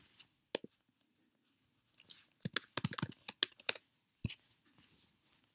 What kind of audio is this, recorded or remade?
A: recorded